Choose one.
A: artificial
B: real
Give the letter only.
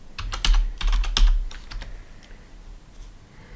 B